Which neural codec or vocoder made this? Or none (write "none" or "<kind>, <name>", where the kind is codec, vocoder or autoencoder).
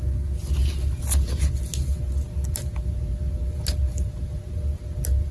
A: none